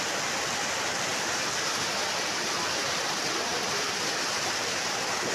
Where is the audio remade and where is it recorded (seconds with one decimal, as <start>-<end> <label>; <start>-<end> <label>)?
0.0-5.3 recorded